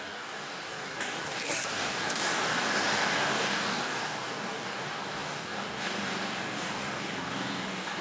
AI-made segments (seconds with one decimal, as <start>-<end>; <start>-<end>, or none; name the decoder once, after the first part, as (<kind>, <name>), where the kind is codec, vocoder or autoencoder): 0.0-8.0 (codec, DAC)